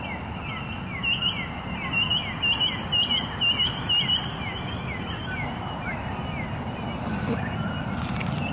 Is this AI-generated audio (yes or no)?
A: no